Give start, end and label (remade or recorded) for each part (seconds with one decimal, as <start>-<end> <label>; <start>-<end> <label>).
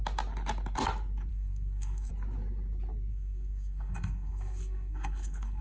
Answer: 0.0-1.3 recorded; 1.3-2.1 remade; 2.1-3.1 recorded; 3.1-5.6 remade